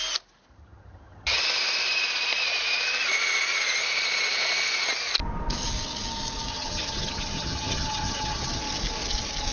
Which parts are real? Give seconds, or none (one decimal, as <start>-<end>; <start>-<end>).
0.0-0.5; 1.4-6.5; 8.6-9.5